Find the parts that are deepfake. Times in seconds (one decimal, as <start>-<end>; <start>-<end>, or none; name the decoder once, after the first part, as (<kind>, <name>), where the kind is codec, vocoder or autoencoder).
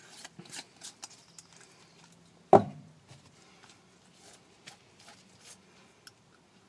none